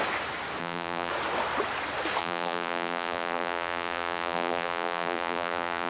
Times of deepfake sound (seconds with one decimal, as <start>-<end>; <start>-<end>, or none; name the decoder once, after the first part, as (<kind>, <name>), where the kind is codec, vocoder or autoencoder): 0.6-1.1 (vocoder, BigVGAN v2); 2.2-5.9